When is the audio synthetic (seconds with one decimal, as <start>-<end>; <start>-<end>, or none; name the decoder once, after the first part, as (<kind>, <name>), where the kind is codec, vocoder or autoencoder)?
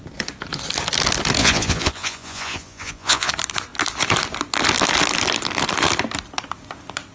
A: 1.4-3.3 (vocoder, Vocos)